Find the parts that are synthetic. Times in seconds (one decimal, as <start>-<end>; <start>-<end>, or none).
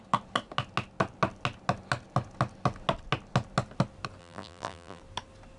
4.2-5.0